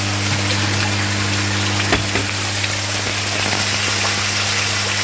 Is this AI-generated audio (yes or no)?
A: no